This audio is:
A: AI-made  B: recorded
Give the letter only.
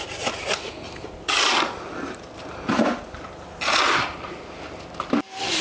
B